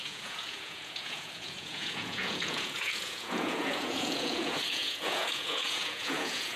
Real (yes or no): no